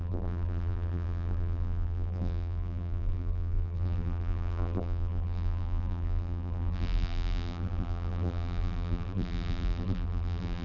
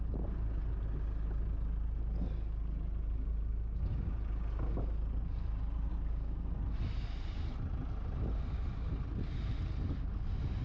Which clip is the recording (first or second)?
second